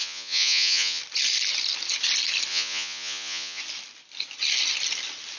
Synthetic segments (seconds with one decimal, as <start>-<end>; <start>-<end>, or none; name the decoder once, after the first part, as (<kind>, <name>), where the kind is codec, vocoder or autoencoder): 0.0-1.0 (vocoder, Vocos); 2.5-3.6